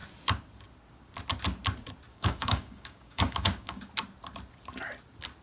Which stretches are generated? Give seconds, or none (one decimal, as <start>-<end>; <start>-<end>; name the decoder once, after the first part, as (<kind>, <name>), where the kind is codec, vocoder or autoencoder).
2.1-3.9 (codec, DAC)